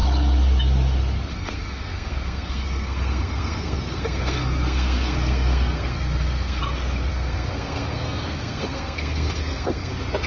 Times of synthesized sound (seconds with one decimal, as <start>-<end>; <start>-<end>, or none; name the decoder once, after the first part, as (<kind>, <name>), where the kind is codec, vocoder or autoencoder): 1.3-6.6 (codec, SNAC); 7.1-9.9